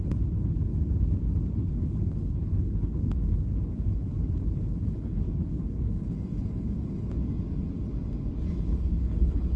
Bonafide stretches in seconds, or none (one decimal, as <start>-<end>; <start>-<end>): 0.7-1.6; 7.2-8.3